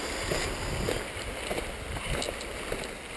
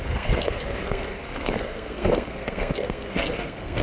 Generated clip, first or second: second